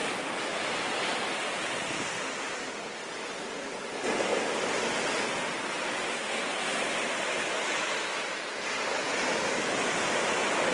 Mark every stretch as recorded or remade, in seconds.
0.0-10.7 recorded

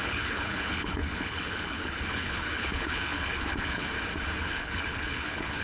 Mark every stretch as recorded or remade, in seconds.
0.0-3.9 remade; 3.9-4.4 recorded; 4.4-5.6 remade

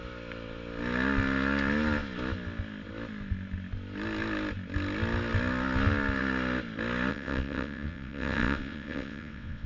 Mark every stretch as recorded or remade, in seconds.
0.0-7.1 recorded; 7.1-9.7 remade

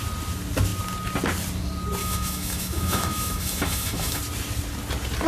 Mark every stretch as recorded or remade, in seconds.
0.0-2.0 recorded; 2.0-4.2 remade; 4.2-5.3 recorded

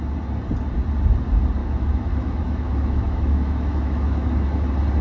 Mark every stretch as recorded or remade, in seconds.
0.0-1.6 recorded; 1.6-4.6 remade; 4.6-5.0 recorded